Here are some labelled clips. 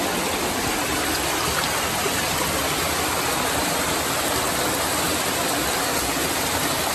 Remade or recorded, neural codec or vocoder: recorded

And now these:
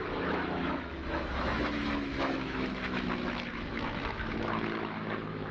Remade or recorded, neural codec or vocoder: remade, autoencoder, DAC-VAE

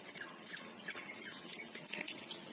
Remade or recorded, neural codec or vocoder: remade, vocoder, WaveNeXt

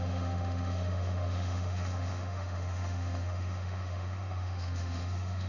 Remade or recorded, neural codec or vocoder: remade, autoencoder, DAC-VAE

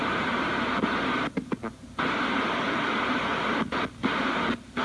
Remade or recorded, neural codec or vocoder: recorded